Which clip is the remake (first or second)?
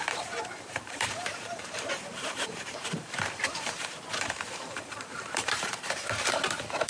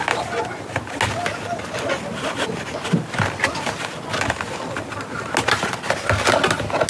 first